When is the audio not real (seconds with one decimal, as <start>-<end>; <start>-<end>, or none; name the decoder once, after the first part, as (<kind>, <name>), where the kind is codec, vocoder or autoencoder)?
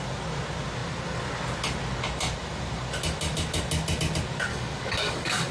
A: 4.5-5.5 (codec, DAC)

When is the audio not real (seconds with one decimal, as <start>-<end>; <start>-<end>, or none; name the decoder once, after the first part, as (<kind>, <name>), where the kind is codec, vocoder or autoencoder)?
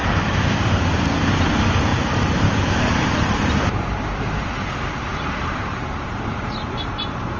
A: 0.0-0.8 (vocoder, BigVGAN v2); 1.9-5.7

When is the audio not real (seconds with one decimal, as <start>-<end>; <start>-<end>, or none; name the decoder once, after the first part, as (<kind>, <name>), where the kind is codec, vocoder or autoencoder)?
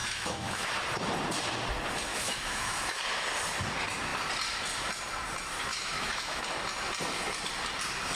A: 0.0-0.7 (autoencoder, DAC-VAE); 2.1-3.0; 5.7-6.4